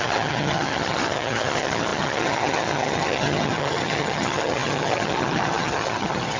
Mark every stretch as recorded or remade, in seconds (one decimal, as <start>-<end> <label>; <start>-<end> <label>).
0.0-6.4 remade